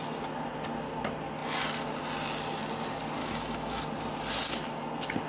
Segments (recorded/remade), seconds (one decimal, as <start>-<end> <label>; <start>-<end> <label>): 0.0-3.2 recorded; 3.2-3.8 remade; 3.8-5.3 recorded